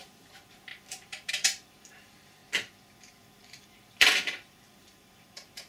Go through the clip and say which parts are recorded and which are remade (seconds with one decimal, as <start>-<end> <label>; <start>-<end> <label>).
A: 0.0-2.4 remade; 2.4-3.0 recorded; 3.0-5.7 remade